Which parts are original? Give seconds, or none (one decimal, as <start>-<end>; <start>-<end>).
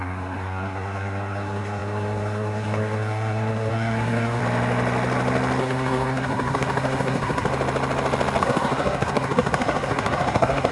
4.4-5.6; 7.5-8.4